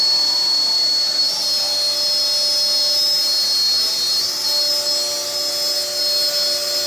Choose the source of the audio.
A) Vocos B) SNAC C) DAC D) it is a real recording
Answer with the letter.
D